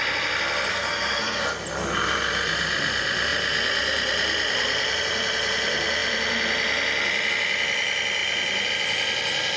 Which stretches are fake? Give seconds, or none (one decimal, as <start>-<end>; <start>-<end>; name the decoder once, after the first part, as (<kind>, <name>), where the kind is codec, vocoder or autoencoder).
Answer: 0.7-1.4 (codec, SNAC)